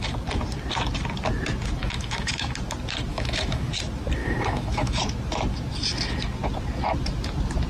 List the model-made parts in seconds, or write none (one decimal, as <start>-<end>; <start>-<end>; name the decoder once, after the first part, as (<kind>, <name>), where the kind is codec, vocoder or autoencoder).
1.8-2.5 (autoencoder, DAC-VAE); 3.1-3.7; 4.2-5.0